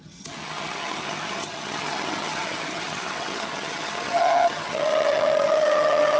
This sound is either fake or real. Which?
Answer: fake